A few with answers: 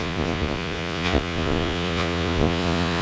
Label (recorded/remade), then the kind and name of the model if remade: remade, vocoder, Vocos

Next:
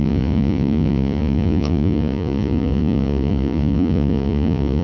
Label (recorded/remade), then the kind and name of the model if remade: remade, vocoder, Vocos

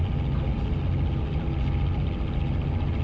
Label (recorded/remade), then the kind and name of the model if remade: recorded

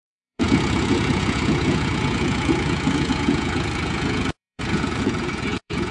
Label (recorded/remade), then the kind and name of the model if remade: remade, vocoder, Vocos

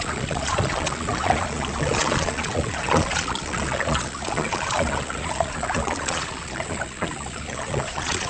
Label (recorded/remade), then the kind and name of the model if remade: remade, vocoder, Vocos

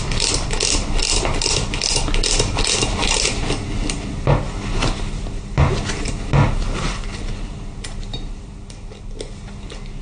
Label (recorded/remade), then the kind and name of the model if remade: recorded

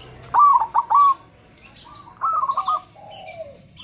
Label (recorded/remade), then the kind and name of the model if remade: recorded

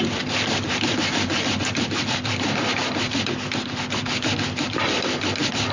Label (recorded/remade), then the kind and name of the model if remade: recorded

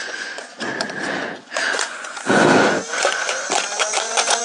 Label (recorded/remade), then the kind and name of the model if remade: remade, vocoder, Vocos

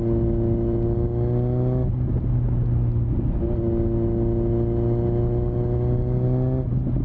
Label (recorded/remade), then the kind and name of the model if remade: recorded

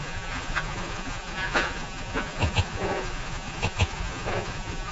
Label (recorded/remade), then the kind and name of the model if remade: remade, vocoder, Vocos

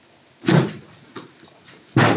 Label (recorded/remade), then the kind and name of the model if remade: recorded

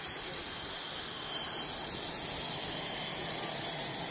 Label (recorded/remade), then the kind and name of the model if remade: recorded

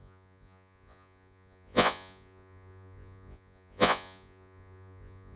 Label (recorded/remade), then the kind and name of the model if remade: remade, vocoder, Vocos